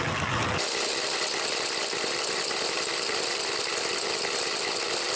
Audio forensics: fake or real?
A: real